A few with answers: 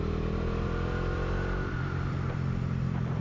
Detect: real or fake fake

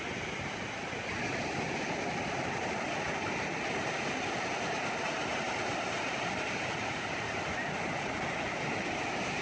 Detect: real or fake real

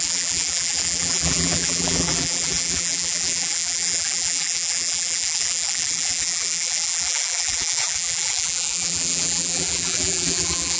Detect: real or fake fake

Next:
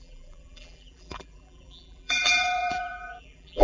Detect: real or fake fake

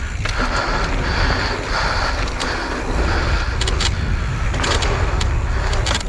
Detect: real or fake real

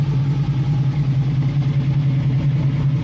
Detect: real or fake real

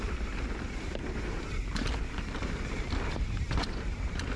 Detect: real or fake real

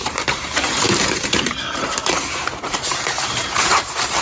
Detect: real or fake fake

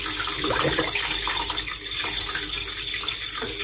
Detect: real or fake real